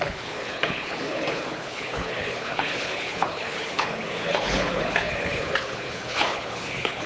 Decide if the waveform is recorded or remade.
remade